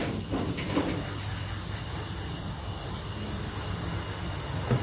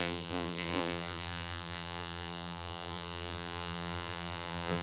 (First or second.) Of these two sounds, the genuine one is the first